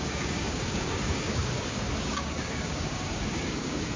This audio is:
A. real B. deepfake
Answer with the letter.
B